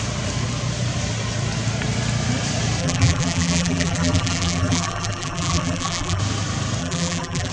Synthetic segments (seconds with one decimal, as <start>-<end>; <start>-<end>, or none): 2.8-6.2; 6.8-7.5